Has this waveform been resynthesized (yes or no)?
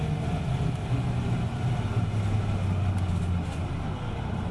no